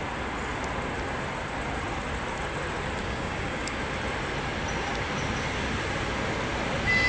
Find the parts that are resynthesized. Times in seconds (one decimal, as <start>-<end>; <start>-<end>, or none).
3.0-3.8